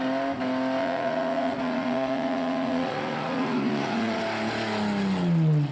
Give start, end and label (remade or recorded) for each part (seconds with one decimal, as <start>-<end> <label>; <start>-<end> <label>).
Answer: 0.0-0.8 recorded; 0.8-4.2 remade; 4.2-5.7 recorded